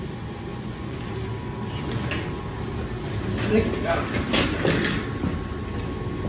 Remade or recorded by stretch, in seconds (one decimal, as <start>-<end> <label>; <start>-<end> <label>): 0.0-0.5 recorded; 0.5-1.0 remade; 1.0-6.3 recorded